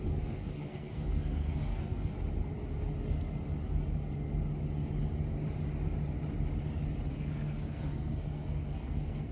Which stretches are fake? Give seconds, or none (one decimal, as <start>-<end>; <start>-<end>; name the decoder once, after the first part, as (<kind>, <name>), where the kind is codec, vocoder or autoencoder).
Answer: 0.0-2.1 (codec, SNAC); 7.1-9.3